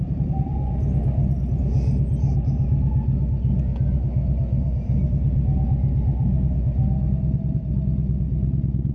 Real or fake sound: real